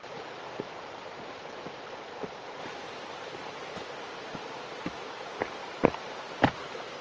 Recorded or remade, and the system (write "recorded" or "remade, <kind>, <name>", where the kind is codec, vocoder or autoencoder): recorded